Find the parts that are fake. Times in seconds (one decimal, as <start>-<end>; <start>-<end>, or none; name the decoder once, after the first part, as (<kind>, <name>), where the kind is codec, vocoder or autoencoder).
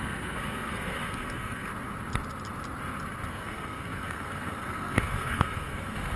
0.0-1.7 (codec, SNAC); 3.3-6.2